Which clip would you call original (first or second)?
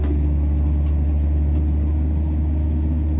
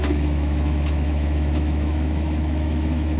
first